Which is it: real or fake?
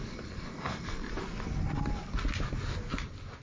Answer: real